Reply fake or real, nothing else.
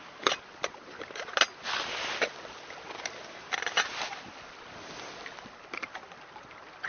real